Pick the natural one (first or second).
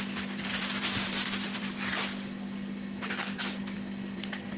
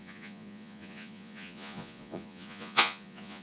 first